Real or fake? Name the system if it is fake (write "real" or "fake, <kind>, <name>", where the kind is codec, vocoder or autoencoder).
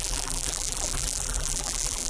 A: fake, vocoder, BigVGAN v2